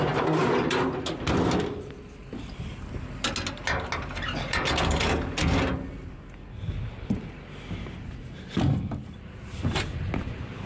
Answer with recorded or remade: recorded